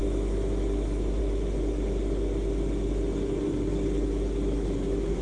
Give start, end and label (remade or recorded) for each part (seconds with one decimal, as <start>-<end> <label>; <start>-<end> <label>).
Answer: 0.0-1.2 remade; 1.2-5.2 recorded